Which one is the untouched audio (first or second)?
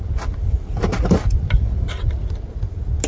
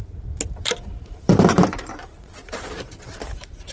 first